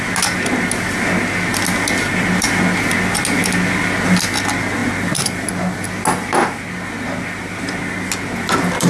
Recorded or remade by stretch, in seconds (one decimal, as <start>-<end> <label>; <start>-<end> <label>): 0.0-8.9 recorded